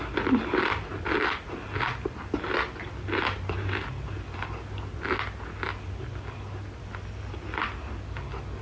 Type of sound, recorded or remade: recorded